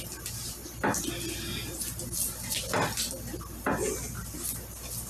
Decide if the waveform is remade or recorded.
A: recorded